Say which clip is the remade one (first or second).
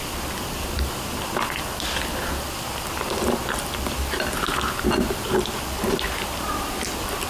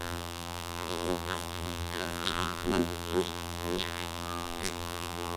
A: second